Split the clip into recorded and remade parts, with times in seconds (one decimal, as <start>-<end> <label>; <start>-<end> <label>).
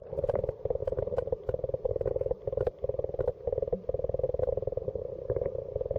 0.0-0.8 recorded; 0.8-4.4 remade; 4.4-6.0 recorded